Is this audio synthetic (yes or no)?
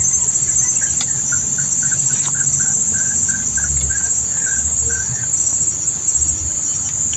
no